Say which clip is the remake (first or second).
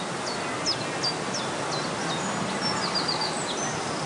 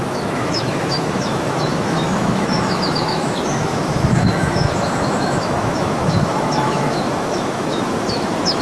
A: second